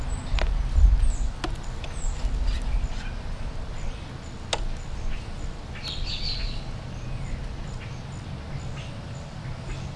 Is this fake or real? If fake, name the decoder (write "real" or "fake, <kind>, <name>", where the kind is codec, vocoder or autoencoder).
real